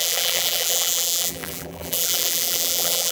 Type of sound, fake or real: fake